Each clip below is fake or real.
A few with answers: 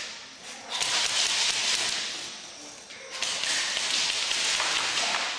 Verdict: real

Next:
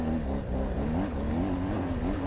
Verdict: real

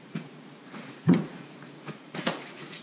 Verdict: fake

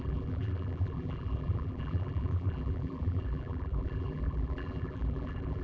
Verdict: fake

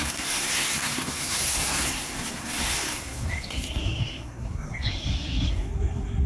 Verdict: fake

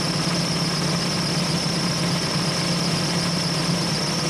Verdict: real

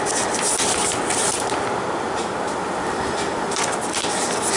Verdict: real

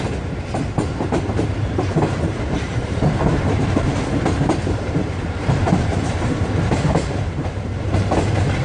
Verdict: fake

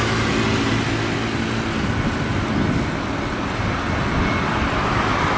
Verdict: real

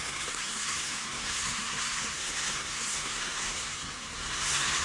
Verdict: fake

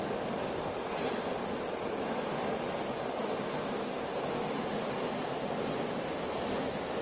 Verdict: real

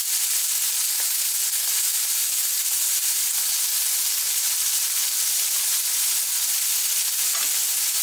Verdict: real